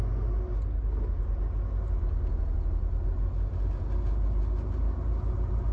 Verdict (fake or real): real